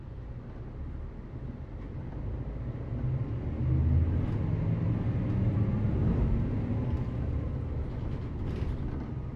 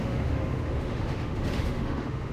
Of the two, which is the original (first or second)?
first